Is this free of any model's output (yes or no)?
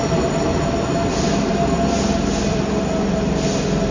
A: yes